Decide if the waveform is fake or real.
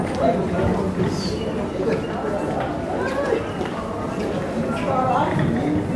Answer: real